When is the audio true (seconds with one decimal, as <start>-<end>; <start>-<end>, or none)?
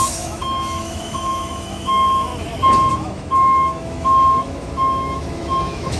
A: 2.3-2.9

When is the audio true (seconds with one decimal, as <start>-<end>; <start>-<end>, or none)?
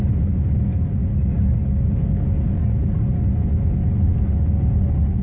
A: 0.0-5.2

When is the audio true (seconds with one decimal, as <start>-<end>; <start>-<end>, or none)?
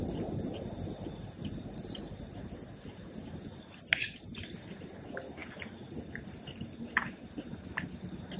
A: 0.0-8.4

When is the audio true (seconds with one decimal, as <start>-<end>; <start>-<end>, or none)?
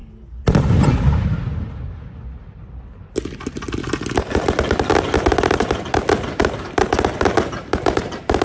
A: 0.0-8.4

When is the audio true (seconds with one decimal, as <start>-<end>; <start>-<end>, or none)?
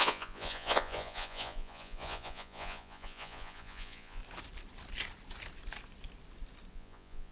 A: 4.2-6.7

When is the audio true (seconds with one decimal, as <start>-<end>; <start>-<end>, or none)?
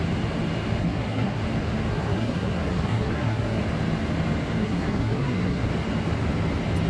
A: 0.0-0.8; 1.4-1.9; 3.6-4.6; 5.7-6.9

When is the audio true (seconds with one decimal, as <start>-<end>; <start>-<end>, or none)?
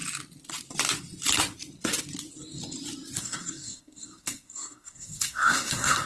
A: 0.0-3.2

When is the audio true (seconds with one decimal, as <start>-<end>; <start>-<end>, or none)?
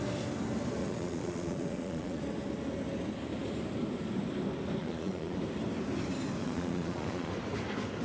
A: 0.0-0.8; 2.2-4.8; 5.4-6.4; 7.3-8.0